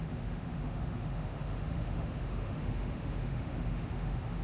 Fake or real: fake